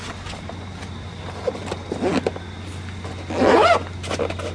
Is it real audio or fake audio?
real